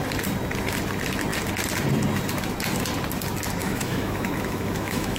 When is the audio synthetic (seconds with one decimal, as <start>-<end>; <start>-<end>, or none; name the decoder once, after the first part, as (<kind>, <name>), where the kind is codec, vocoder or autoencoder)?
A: 3.6-5.2 (autoencoder, DAC-VAE)